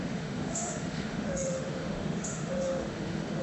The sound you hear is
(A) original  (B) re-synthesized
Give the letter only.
B